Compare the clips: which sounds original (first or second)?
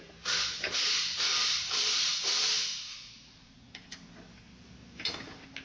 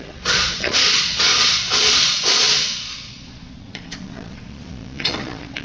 first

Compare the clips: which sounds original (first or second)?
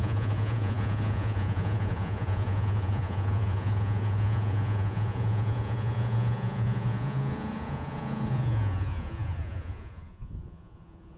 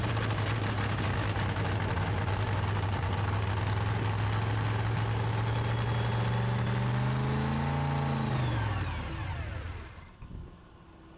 second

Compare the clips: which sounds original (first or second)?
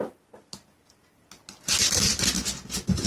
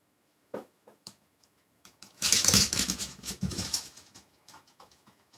first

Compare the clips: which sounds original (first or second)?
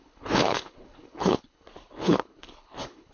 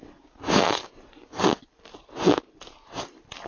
second